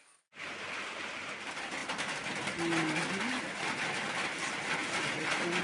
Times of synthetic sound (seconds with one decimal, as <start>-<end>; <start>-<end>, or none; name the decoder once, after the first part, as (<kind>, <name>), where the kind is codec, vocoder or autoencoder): none